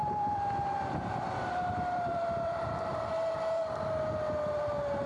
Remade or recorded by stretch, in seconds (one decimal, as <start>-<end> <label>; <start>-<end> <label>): 0.0-3.1 remade; 3.1-5.1 recorded